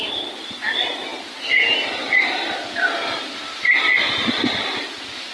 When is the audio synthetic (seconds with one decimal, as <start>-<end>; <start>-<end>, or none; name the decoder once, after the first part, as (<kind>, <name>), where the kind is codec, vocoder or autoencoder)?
none